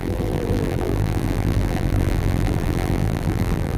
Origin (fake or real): fake